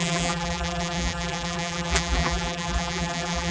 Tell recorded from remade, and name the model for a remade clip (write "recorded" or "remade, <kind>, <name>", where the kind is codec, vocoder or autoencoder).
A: remade, vocoder, BigVGAN v2